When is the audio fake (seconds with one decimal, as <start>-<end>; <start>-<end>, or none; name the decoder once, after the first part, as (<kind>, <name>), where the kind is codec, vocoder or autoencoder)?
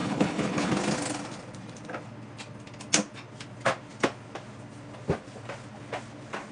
0.0-0.7 (codec, HILCodec)